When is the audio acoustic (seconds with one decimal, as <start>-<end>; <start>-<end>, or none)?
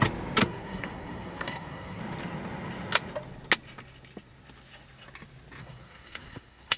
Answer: 0.0-0.4; 2.0-5.6